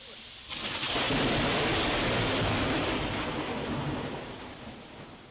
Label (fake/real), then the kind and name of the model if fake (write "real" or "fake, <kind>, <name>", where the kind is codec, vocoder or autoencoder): real